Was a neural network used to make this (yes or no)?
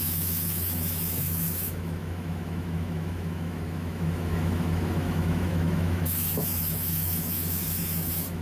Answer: yes